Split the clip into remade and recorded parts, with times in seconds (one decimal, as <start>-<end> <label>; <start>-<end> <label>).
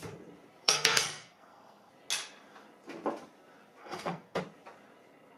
0.0-0.6 recorded; 0.6-1.9 remade; 1.9-3.8 recorded; 3.8-4.4 remade; 4.4-5.4 recorded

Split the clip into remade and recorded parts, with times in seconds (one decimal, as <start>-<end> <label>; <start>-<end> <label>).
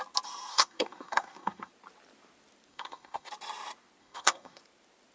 0.0-0.5 recorded; 0.5-1.7 remade; 1.7-2.7 recorded; 2.7-3.3 remade; 3.3-4.0 recorded; 4.0-4.6 remade; 4.6-5.1 recorded